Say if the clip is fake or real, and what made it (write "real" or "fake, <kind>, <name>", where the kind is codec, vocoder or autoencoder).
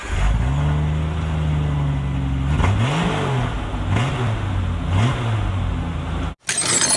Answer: real